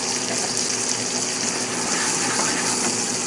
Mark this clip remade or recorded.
recorded